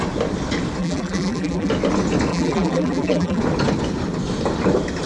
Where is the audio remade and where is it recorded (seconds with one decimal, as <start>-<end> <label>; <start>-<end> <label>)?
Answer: 0.0-0.8 recorded; 0.8-1.7 remade; 1.7-2.3 recorded; 2.3-3.4 remade; 3.4-5.1 recorded